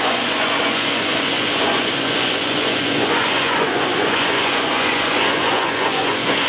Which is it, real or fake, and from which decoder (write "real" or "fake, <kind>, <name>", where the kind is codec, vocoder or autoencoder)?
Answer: fake, vocoder, Vocos